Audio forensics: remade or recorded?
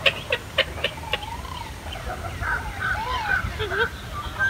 recorded